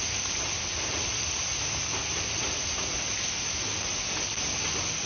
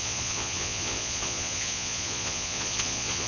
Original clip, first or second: first